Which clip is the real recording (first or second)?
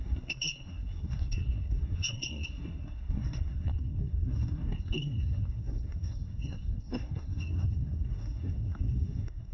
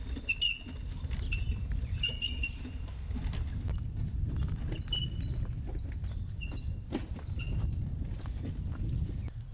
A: second